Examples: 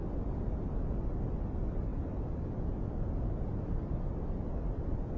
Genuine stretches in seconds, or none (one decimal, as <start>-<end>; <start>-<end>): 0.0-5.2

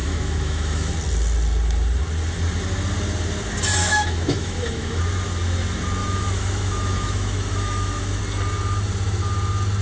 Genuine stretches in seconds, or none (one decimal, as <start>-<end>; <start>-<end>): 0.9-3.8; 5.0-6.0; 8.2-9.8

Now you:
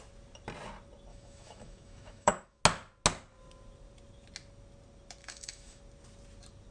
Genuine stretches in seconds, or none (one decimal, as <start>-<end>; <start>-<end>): 0.0-1.1; 2.6-5.2; 5.8-6.7